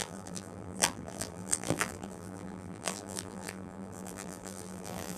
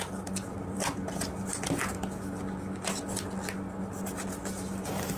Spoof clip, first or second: first